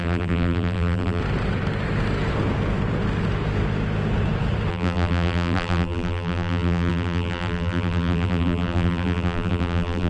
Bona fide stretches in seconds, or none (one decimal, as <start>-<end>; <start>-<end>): 1.2-4.7